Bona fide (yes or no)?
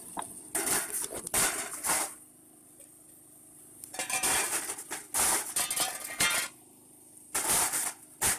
no